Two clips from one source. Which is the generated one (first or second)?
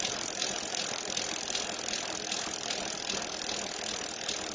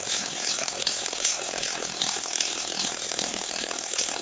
second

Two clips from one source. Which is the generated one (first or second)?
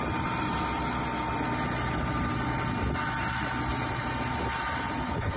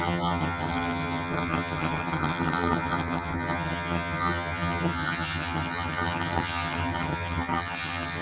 second